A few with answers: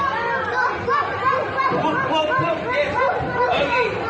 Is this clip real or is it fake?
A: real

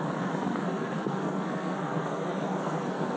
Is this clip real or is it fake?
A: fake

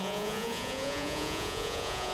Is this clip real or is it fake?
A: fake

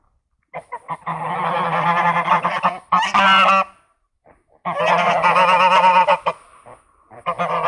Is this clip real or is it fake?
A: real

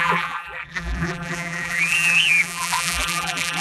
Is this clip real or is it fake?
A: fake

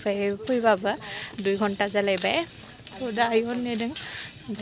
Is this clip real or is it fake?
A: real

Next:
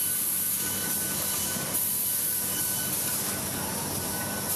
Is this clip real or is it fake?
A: real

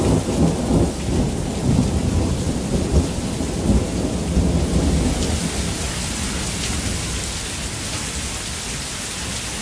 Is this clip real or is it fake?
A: real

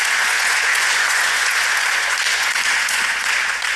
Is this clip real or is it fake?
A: fake